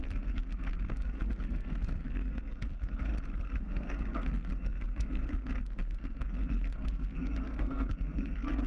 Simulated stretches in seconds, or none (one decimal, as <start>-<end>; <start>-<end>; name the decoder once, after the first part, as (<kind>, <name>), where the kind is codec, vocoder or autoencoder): 0.0-3.1 (codec, SNAC); 3.6-8.7